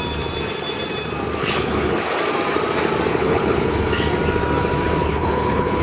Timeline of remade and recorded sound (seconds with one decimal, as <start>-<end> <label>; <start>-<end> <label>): 0.0-1.4 recorded; 1.4-2.2 remade; 2.2-3.1 recorded; 3.1-3.9 remade; 3.9-5.0 recorded; 5.0-5.8 remade